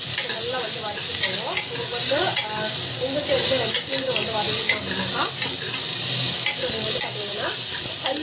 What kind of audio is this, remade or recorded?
recorded